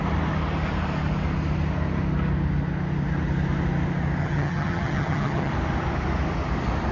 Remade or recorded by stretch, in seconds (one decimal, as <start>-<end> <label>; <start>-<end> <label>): 0.0-4.2 recorded; 4.2-5.5 remade; 5.5-6.9 recorded